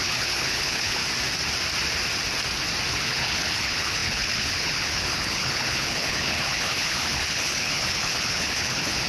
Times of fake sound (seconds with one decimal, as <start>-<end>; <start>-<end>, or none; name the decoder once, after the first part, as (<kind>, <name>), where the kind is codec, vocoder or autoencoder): 0.0-1.0 (codec, HILCodec); 2.9-9.1